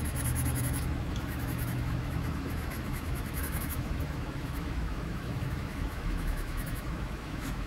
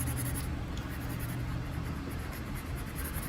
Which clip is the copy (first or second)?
first